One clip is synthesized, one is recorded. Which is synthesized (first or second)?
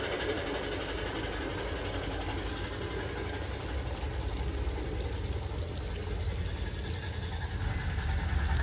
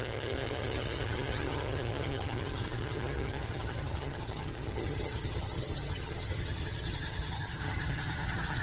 second